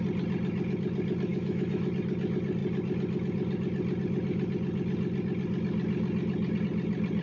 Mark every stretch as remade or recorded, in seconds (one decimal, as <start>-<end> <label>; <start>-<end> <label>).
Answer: 0.0-1.3 recorded; 1.3-1.9 remade; 1.9-7.2 recorded